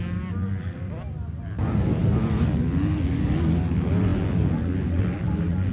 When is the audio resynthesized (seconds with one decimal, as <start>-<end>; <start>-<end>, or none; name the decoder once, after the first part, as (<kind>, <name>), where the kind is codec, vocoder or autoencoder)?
none